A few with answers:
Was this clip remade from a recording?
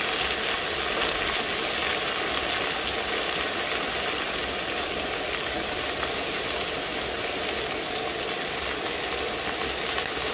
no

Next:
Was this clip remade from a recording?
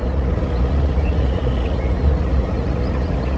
yes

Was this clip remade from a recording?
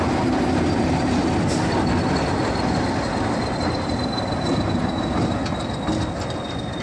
no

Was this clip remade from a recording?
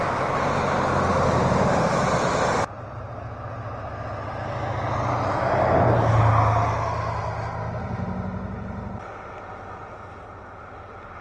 no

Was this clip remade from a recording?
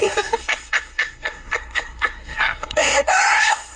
yes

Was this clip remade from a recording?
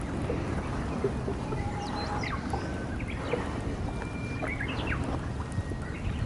no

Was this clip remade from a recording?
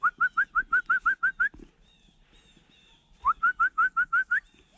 no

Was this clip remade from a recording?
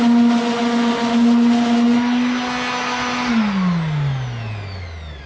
no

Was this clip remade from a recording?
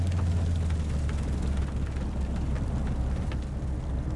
no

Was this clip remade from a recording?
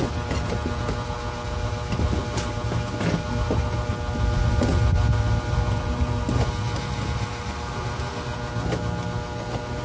no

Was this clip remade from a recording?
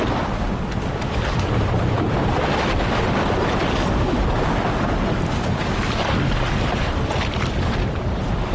no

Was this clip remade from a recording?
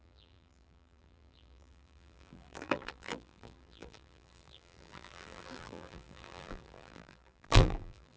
yes